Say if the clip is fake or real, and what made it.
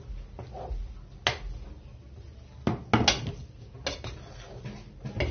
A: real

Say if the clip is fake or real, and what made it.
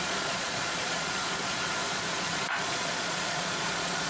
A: fake, vocoder, Vocos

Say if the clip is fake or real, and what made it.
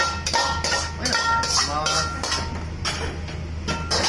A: real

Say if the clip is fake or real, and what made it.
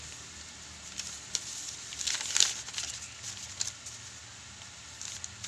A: real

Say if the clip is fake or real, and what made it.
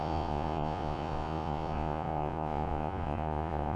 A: fake, vocoder, Vocos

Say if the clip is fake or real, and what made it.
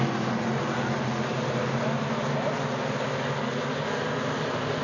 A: real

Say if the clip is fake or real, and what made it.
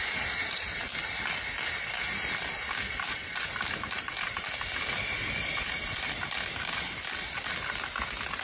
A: real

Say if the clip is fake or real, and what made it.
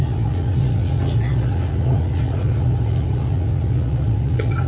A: fake, vocoder, Vocos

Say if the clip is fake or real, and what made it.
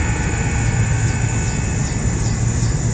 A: real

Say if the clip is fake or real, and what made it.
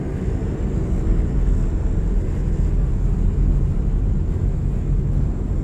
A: real